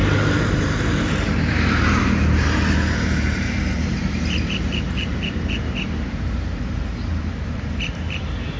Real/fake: fake